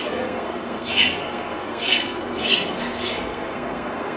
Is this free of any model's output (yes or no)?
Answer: no